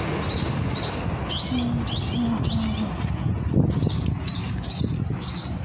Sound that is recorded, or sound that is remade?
recorded